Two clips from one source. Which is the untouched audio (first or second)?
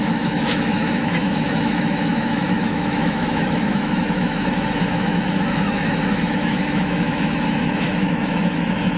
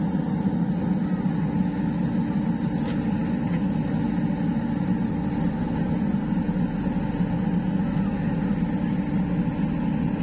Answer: second